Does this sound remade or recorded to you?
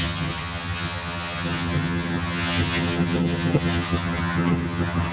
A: remade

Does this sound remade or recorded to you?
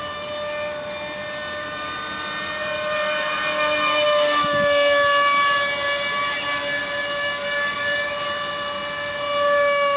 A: recorded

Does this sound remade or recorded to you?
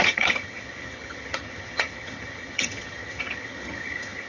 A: remade